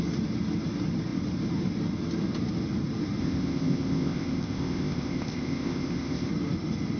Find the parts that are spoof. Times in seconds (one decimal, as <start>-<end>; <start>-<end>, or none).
3.2-6.3